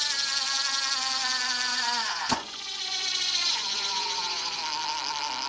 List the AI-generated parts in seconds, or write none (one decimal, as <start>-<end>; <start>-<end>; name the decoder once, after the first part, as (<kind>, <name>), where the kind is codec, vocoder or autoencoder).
1.7-4.6 (vocoder, Vocos)